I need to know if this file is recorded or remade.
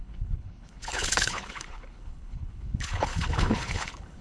remade